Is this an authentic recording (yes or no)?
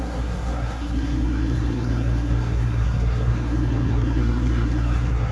no